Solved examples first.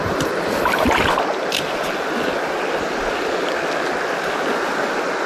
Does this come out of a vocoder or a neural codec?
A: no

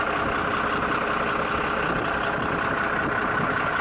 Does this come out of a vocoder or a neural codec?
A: no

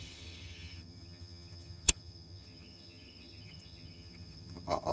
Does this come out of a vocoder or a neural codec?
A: yes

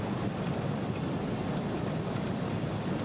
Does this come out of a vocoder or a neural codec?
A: no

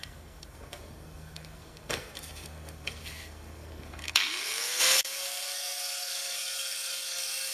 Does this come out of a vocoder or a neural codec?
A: yes